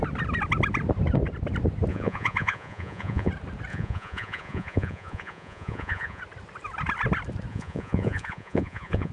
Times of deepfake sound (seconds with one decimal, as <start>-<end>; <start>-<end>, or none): 1.9-3.3; 3.7-6.2; 7.5-9.1